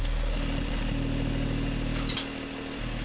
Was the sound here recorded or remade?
recorded